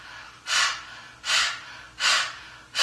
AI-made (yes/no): no